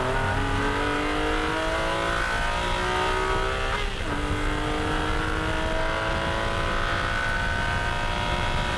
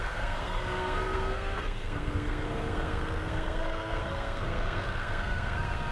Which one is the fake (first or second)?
second